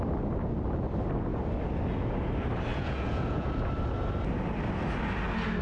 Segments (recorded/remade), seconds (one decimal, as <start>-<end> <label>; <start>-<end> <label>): 0.0-2.7 recorded; 2.7-3.7 remade; 3.7-5.6 recorded